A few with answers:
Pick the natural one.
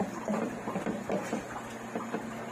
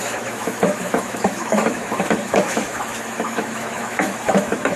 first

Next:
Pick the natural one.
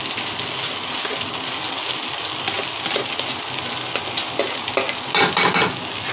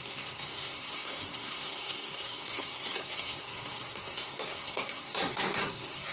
first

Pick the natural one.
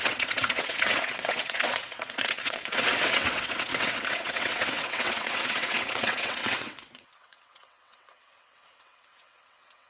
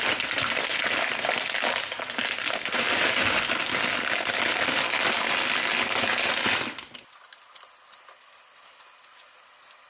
second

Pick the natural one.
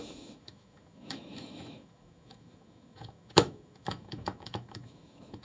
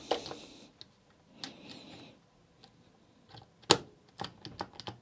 second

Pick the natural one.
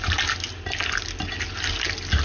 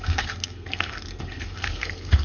first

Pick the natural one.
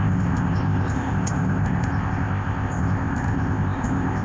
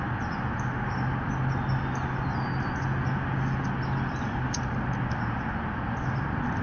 second